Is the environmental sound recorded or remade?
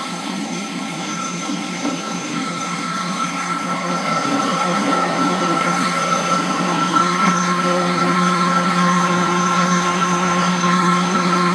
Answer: remade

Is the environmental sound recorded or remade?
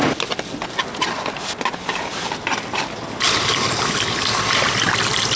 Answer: recorded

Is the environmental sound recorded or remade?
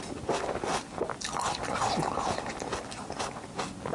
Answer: recorded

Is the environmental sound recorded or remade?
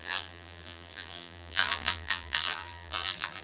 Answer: remade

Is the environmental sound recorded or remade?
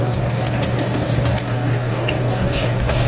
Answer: remade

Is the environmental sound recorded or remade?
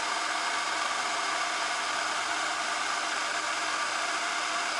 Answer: recorded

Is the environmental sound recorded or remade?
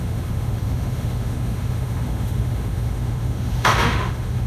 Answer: remade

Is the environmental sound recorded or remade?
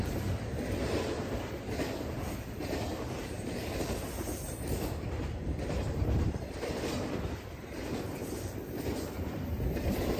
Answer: remade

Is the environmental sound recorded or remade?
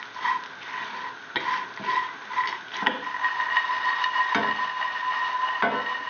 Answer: recorded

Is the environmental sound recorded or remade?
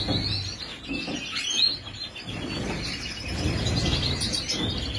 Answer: recorded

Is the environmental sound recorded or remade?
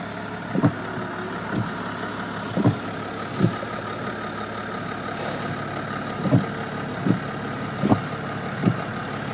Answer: recorded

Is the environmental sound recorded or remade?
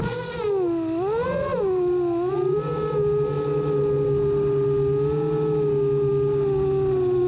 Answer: recorded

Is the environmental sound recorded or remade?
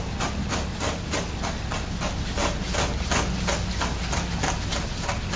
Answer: recorded